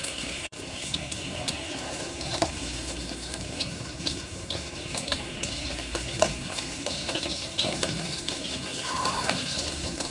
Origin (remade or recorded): remade